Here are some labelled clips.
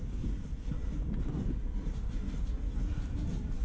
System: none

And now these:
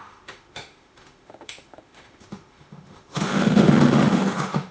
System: autoencoder, DAC-VAE